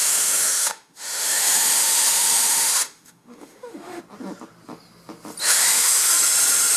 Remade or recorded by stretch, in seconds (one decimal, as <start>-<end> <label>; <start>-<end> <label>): 0.0-4.0 remade; 4.0-5.4 recorded; 5.4-6.1 remade; 6.1-6.8 recorded